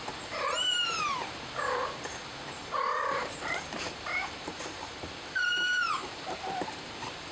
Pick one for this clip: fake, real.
fake